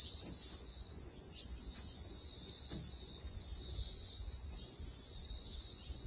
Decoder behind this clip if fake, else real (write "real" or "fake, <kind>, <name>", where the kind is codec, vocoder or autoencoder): fake, vocoder, Vocos